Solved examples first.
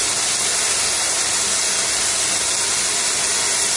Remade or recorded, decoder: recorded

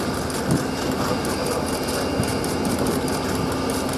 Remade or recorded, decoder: recorded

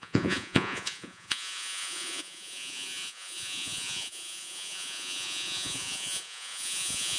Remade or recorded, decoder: remade, vocoder, Vocos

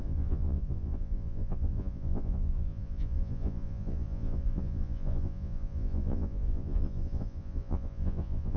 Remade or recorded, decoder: remade, vocoder, Vocos